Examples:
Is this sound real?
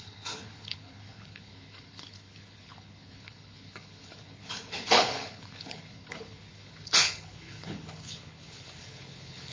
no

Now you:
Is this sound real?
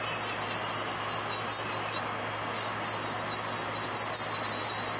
yes